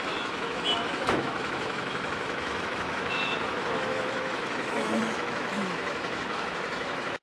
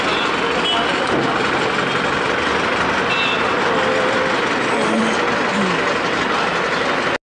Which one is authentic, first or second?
second